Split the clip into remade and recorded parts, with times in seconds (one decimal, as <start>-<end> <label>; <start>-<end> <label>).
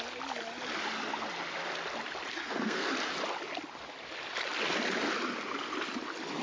0.0-2.4 recorded; 2.4-2.9 remade; 2.9-6.4 recorded